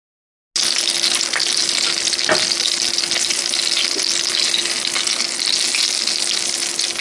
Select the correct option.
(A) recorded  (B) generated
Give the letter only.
A